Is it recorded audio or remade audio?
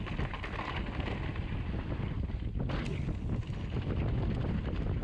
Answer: recorded